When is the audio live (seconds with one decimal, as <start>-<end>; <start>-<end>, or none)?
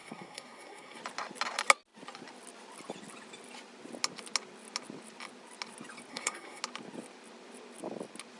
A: 1.0-6.1; 6.6-8.4